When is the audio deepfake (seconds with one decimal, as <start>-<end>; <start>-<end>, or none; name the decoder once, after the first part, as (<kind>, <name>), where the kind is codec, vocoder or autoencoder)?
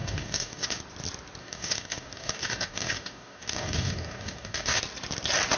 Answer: 0.0-0.8 (codec, DAC); 1.4-4.8